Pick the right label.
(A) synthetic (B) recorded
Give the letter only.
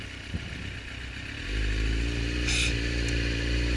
B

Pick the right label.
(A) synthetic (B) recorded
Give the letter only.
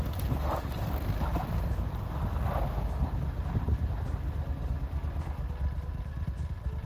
B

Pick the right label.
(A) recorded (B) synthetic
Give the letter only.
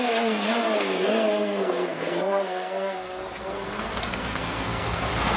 B